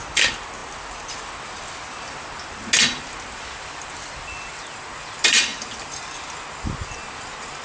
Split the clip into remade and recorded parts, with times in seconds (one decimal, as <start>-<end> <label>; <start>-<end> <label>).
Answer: 0.0-7.6 recorded